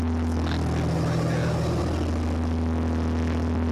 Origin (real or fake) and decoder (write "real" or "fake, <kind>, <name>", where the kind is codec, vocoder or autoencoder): real